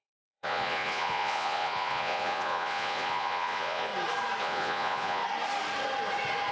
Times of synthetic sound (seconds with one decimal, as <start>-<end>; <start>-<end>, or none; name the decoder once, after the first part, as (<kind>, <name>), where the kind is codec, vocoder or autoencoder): 0.0-3.9 (vocoder, Vocos); 4.4-5.2